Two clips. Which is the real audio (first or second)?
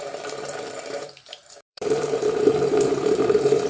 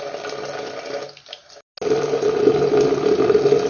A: second